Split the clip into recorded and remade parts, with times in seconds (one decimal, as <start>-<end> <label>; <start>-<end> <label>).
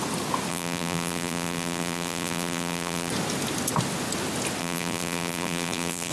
0.0-0.5 recorded; 0.5-3.1 remade; 3.1-4.6 recorded; 4.6-6.1 remade